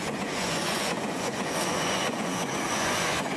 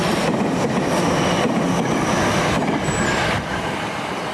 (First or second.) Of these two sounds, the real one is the second